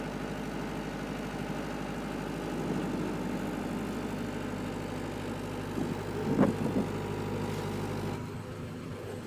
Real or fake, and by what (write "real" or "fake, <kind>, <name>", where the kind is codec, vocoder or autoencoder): real